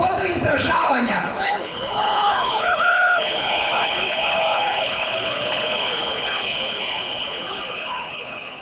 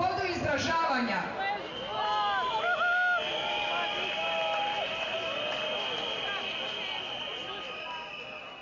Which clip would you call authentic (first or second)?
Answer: second